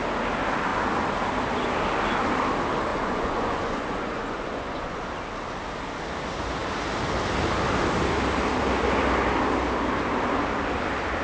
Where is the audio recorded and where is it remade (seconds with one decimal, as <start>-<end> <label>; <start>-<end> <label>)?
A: 0.0-2.9 recorded; 2.9-5.0 remade; 5.0-11.2 recorded